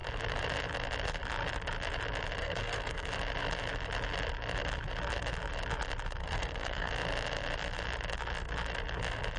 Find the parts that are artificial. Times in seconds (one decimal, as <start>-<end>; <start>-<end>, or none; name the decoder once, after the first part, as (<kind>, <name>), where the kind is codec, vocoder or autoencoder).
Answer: 2.4-3.1 (codec, SNAC); 6.2-6.9